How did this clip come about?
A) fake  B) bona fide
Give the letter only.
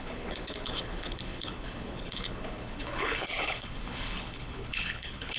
A